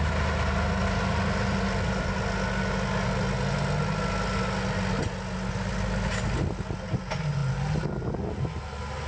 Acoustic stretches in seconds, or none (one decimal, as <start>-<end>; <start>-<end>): 0.0-9.1